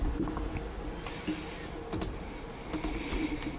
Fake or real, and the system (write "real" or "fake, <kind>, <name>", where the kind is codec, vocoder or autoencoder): fake, vocoder, BigVGAN v2